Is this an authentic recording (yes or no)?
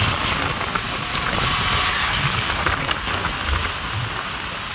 yes